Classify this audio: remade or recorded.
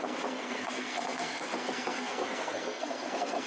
remade